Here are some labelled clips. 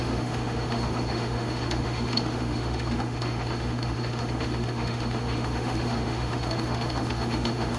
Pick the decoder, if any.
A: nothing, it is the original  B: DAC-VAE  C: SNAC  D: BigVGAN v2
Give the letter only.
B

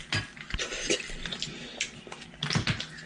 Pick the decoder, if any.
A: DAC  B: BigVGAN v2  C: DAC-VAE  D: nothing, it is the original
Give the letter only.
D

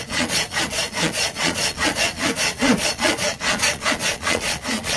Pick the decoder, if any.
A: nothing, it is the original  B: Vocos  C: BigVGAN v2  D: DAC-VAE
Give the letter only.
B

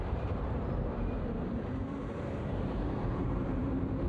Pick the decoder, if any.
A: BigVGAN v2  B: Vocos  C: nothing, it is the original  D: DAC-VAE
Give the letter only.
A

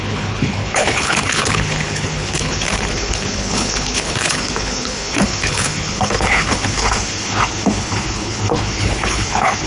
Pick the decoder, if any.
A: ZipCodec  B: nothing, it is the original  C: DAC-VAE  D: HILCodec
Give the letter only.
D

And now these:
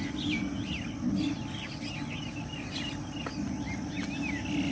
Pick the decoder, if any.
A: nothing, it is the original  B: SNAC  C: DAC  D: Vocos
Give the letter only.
A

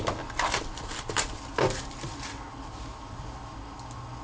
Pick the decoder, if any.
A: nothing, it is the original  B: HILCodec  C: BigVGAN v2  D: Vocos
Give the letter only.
A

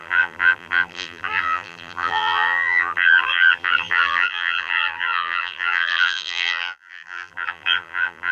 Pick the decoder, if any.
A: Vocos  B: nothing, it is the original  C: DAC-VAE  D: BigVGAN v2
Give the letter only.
D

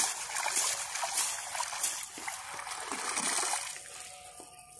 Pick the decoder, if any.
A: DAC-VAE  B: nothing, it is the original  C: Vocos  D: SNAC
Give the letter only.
B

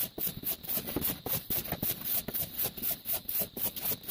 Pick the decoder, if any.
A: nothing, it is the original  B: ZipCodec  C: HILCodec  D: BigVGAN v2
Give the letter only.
A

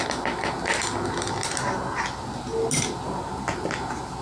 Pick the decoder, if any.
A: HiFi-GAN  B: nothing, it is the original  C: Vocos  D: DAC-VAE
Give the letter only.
B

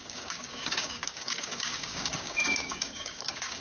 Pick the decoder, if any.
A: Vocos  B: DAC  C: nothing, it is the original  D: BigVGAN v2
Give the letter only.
B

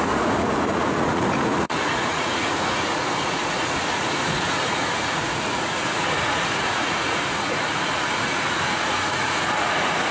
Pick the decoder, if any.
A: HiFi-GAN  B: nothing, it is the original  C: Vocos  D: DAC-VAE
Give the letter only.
C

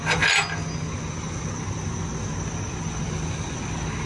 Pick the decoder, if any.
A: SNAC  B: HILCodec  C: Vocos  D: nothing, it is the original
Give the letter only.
D